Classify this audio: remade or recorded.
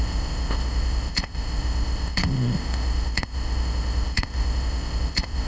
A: remade